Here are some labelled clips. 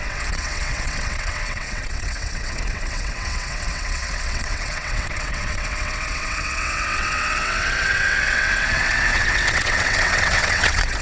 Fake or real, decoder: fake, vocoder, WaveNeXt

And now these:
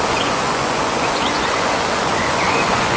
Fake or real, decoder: fake, vocoder, Vocos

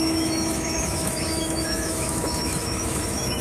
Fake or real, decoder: fake, autoencoder, DAC-VAE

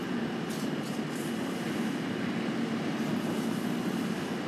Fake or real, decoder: real